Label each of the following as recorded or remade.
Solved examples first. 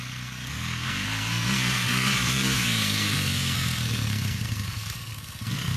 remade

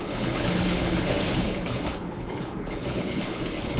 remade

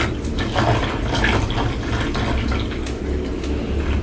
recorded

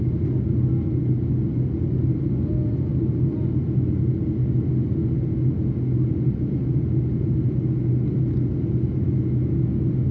recorded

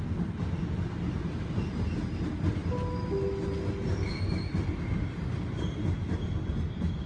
recorded